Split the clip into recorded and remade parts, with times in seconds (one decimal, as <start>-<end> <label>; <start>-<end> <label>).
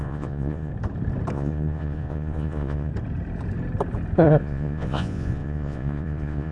0.0-0.7 remade; 0.7-1.3 recorded; 1.3-2.9 remade; 2.9-4.4 recorded; 4.4-6.5 remade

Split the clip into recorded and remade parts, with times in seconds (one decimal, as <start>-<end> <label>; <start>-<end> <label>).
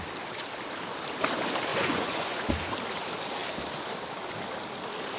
0.0-1.7 recorded; 1.7-2.5 remade; 2.5-5.2 recorded